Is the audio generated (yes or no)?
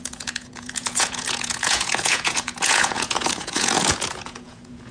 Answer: yes